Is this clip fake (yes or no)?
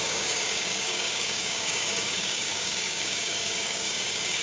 yes